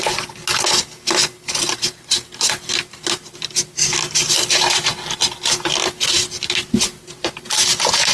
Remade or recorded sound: recorded